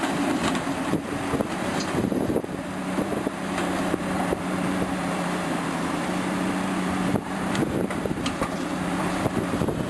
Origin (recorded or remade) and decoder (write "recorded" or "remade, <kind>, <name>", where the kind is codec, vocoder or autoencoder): remade, vocoder, BigVGAN v2